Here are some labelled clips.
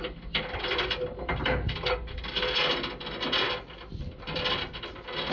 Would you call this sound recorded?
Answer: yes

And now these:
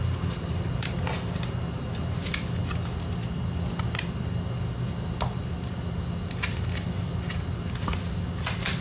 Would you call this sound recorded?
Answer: yes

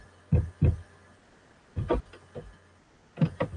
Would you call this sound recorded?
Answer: yes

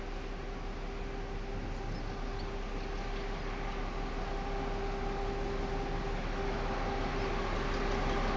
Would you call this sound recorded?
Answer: yes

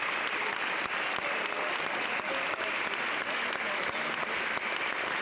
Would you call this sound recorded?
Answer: yes